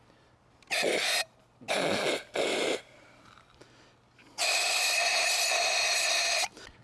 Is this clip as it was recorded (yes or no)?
yes